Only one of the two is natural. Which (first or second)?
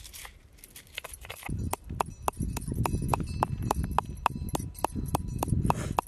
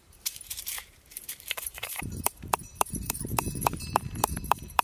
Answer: first